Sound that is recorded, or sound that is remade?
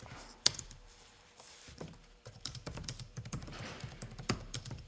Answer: remade